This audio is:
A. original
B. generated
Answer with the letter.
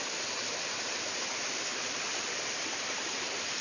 A